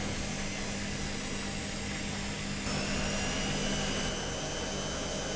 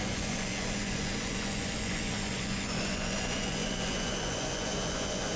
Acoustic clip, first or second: first